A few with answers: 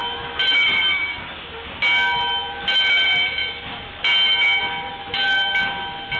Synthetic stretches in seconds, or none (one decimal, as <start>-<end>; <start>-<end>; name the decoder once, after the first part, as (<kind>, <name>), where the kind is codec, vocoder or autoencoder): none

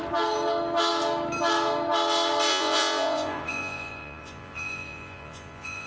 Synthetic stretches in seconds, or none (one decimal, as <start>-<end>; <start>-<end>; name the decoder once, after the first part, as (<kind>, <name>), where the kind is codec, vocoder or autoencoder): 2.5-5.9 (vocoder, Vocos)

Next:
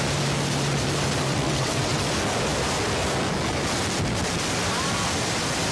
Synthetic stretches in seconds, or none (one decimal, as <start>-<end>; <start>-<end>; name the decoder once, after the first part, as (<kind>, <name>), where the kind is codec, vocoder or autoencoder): 1.3-2.0 (vocoder, WaveNeXt)